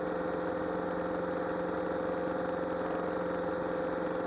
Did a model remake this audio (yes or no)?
no